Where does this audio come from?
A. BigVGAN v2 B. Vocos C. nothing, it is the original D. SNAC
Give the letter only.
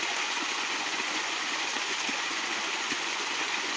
B